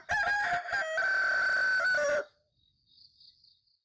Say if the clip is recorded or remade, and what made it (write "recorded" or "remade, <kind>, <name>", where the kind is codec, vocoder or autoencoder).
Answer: recorded